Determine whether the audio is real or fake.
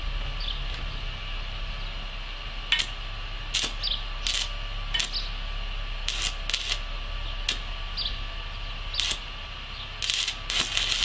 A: real